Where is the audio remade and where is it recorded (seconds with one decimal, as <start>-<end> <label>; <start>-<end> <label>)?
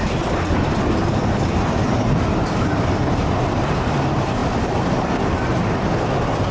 0.0-6.5 recorded